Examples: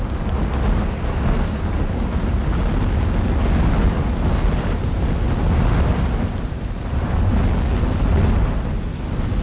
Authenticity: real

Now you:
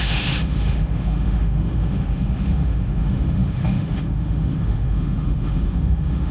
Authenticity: fake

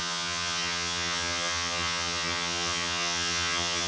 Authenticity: fake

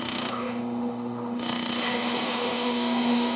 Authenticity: fake